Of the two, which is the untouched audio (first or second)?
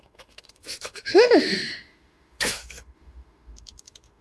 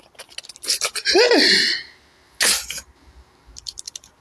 second